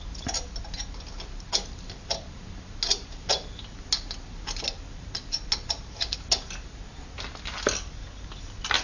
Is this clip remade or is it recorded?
recorded